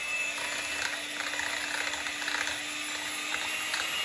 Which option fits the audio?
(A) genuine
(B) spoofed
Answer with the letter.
A